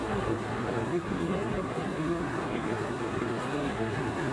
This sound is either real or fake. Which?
fake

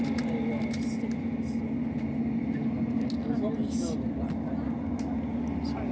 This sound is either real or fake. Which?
real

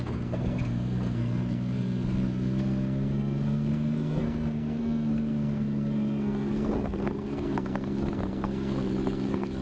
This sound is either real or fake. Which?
fake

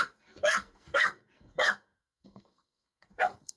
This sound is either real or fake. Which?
fake